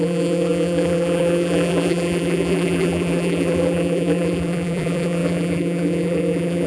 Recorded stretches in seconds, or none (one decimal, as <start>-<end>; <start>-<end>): none